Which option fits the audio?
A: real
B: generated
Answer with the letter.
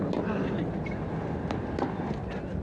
A